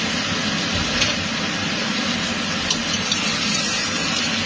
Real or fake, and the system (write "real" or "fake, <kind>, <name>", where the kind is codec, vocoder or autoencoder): real